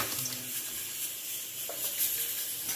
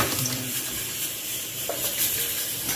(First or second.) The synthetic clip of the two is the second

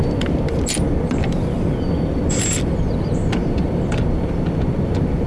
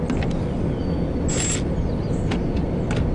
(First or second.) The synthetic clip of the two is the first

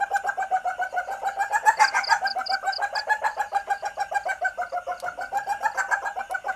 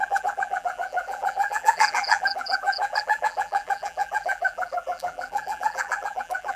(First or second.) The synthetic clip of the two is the second